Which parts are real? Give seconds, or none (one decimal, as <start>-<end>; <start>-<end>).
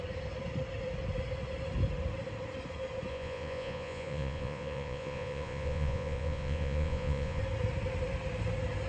0.0-3.1; 7.4-8.9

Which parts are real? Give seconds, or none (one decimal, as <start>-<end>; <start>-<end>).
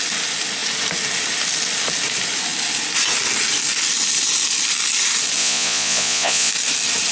0.0-5.4; 6.5-7.1